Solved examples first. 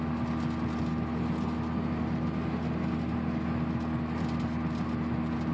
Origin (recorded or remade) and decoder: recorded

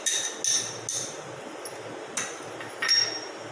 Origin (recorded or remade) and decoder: recorded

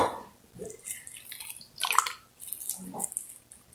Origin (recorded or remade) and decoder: recorded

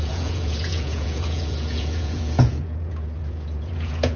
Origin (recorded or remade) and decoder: remade, vocoder, Vocos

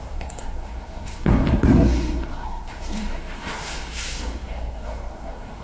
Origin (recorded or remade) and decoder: remade, codec, SNAC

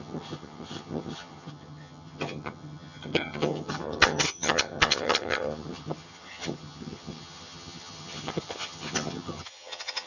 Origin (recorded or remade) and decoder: remade, vocoder, HiFi-GAN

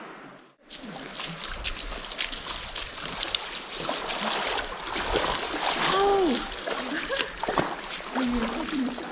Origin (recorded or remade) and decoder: recorded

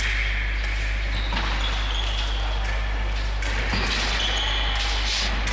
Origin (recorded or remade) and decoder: recorded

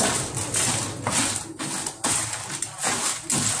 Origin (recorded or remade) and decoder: recorded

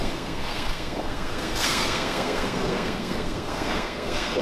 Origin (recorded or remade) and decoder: remade, codec, SNAC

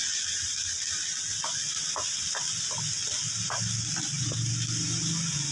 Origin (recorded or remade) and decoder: recorded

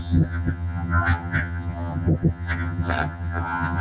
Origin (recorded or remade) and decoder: remade, vocoder, HiFi-GAN